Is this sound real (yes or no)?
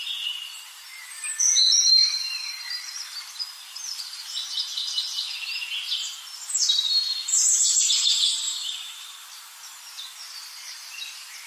no